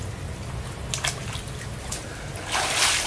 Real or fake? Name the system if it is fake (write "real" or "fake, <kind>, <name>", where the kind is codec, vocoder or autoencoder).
real